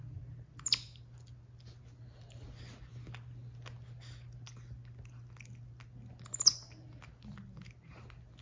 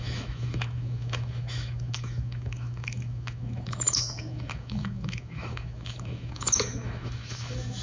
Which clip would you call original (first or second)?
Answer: first